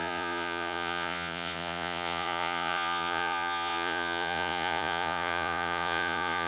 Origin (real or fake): fake